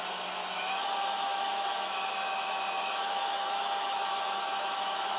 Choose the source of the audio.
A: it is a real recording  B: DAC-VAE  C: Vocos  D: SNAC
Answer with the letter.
B